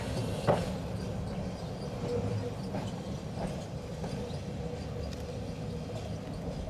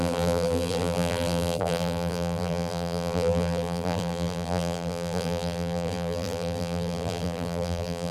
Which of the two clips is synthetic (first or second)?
second